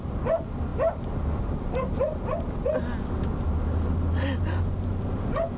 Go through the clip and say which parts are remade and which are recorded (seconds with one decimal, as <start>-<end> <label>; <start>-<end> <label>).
0.0-5.6 recorded